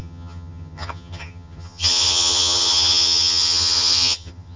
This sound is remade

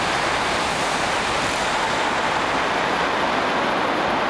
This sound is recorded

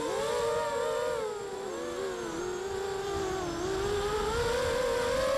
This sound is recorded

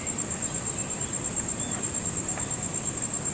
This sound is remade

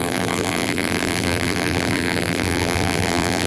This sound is remade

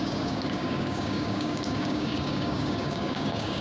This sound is remade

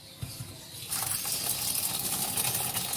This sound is recorded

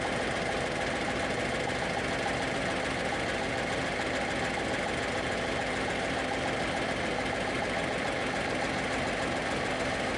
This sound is recorded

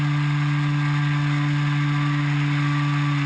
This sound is recorded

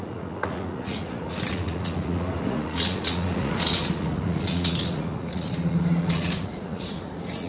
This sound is remade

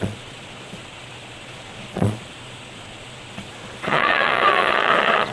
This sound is remade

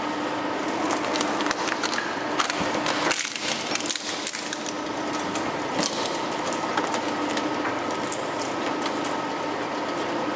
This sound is recorded